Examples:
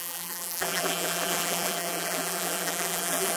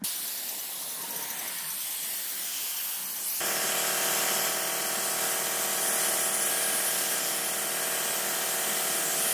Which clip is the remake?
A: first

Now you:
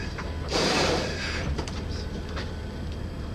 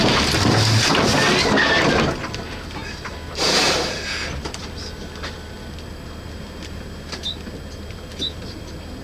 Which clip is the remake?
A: first